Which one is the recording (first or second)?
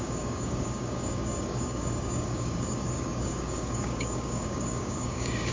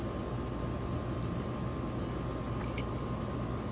second